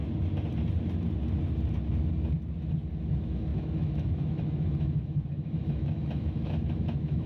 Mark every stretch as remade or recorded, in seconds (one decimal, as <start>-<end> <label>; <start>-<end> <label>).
0.0-3.0 recorded; 3.0-7.3 remade